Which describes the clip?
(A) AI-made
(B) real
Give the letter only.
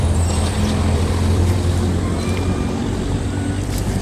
A